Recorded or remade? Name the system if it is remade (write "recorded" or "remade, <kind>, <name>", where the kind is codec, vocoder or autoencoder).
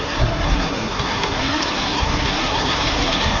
remade, codec, SNAC